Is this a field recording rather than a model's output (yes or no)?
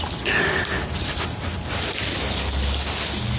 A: yes